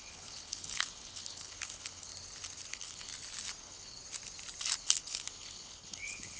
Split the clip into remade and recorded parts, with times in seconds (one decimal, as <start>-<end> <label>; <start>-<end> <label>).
0.0-2.1 remade; 2.1-2.7 recorded; 2.7-3.1 remade; 3.1-3.6 recorded; 3.6-4.0 remade; 4.0-4.8 recorded; 4.8-6.4 remade